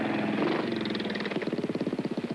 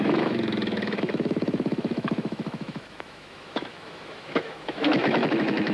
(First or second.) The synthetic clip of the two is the second